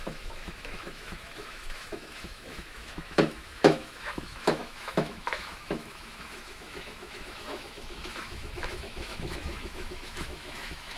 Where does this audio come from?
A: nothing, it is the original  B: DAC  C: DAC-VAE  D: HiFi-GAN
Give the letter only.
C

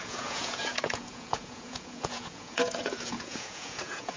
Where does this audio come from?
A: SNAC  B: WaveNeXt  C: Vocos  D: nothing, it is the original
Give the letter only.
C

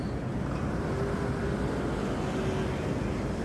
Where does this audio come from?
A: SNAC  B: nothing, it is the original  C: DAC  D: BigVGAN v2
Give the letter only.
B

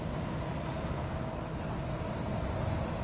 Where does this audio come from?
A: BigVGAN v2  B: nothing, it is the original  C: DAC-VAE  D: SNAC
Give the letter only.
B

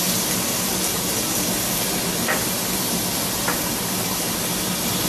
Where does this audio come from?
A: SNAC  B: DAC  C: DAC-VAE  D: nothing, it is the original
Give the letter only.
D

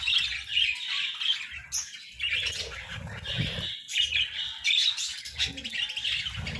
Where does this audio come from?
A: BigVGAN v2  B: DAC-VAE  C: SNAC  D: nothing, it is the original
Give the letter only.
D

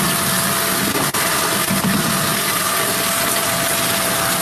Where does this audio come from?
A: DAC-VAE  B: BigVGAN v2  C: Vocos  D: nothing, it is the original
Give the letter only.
D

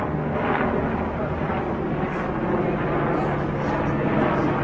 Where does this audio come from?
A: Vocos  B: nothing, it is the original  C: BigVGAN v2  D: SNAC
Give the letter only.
B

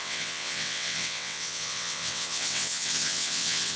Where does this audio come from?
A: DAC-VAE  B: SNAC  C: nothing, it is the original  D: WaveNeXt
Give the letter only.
D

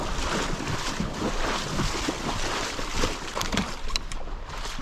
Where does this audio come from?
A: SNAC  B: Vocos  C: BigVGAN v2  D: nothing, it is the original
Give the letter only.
D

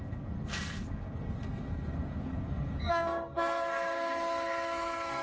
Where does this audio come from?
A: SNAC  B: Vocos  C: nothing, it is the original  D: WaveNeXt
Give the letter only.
A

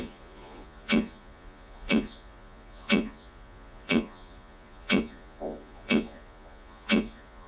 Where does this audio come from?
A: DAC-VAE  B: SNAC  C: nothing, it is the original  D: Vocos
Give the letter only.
D